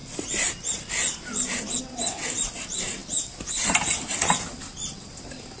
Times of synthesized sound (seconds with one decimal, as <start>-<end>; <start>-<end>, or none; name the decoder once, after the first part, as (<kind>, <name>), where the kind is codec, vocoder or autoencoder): 3.0-5.6 (vocoder, BigVGAN v2)